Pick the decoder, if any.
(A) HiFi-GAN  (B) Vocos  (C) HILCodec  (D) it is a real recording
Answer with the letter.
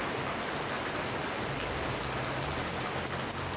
D